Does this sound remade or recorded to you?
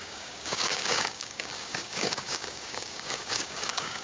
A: remade